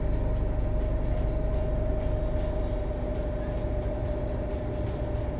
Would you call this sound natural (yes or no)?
yes